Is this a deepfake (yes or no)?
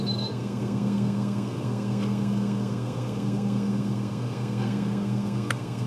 yes